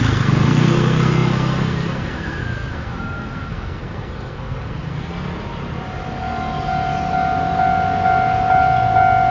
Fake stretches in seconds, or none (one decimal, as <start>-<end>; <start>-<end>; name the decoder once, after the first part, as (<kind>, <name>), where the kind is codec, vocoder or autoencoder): 0.0-5.1 (codec, SNAC)